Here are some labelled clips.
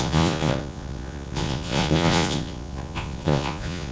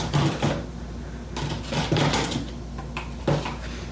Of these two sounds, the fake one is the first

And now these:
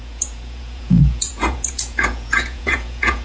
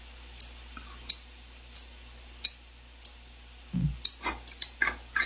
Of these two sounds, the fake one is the first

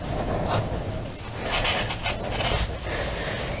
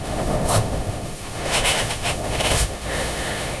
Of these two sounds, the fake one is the second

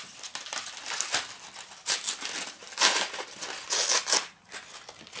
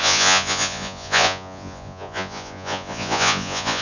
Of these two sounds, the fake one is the second